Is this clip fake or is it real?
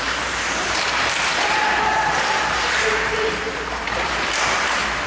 fake